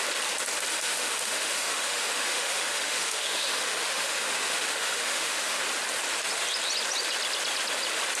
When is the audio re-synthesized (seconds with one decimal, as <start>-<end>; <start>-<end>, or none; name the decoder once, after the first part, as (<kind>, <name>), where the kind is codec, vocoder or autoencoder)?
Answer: 0.7-5.6 (autoencoder, DAC-VAE)